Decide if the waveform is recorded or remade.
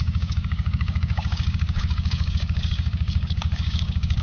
remade